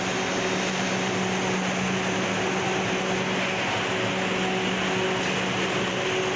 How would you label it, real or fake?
real